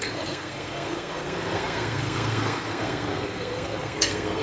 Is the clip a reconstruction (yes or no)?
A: yes